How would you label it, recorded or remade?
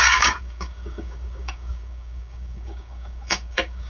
remade